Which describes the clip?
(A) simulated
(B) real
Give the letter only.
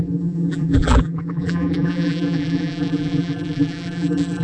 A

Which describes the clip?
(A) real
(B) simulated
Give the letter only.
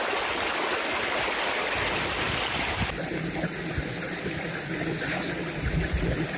A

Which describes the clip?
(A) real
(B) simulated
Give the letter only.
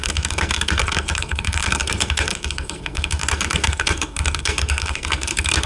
B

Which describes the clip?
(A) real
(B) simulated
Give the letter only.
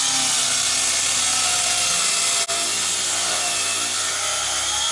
A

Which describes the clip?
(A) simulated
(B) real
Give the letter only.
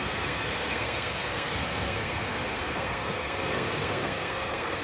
A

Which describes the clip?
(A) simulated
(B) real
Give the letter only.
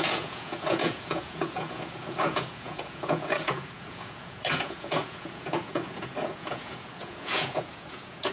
A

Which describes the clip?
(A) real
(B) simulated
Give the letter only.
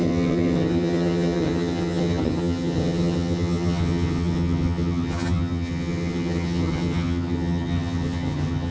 B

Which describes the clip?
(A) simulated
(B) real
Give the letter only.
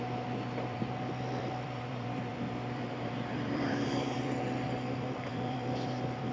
A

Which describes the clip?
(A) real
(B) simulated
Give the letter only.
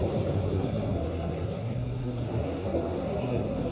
B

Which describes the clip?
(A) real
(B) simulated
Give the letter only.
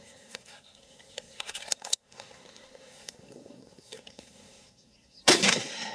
B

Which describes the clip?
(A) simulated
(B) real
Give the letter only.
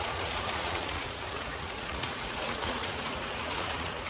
A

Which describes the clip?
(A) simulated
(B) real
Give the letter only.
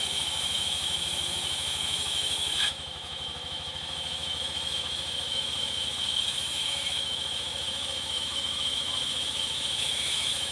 A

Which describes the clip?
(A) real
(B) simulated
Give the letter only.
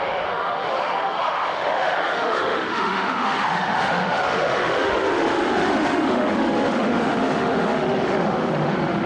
B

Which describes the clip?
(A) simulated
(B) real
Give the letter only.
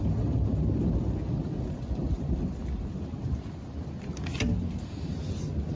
B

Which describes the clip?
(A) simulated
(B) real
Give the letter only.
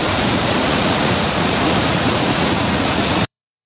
A